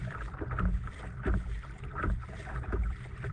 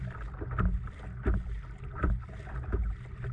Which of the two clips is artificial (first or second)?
first